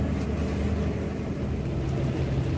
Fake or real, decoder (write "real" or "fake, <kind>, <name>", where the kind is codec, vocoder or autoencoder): real